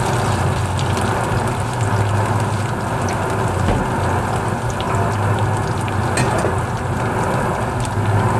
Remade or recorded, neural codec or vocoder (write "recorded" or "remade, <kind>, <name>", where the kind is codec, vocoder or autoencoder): recorded